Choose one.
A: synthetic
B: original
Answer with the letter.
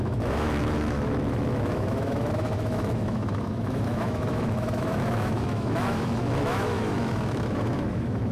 A